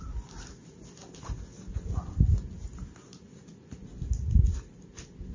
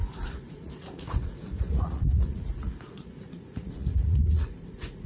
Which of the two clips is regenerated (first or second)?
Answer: second